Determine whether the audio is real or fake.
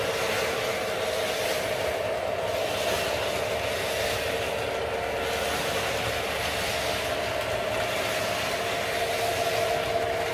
real